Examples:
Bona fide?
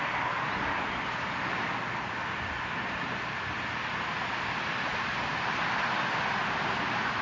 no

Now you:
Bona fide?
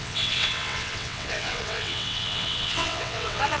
no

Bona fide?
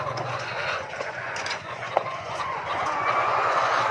no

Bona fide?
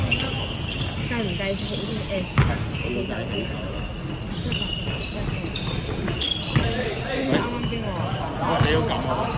yes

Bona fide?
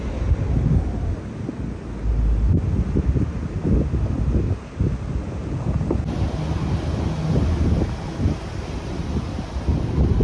yes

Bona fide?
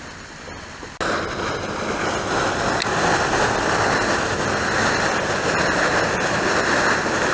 yes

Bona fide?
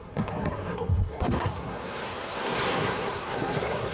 no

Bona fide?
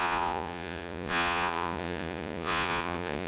no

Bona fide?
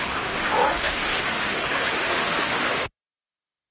no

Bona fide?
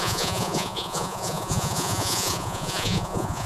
no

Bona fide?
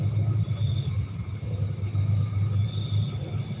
yes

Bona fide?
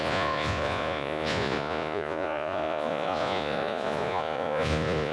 no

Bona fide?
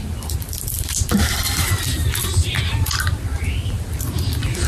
no